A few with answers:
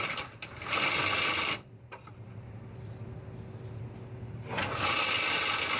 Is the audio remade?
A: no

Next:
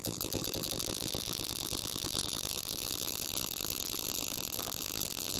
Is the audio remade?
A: yes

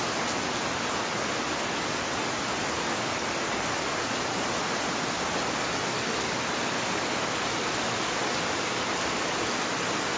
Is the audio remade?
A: no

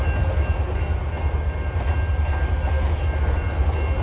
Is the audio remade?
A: no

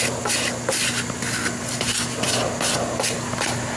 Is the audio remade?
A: no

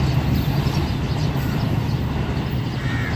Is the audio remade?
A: no